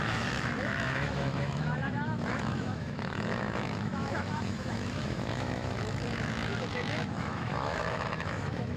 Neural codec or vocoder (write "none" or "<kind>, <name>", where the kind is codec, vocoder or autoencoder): autoencoder, DAC-VAE